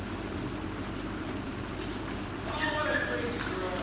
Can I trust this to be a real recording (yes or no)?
yes